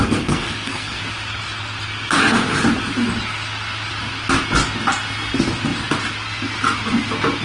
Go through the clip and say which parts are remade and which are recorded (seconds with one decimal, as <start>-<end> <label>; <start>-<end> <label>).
0.0-1.0 remade; 1.0-7.4 recorded